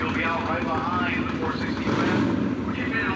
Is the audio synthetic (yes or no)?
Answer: no